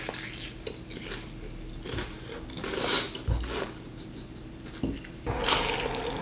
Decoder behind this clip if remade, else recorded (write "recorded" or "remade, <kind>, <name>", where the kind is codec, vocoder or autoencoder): recorded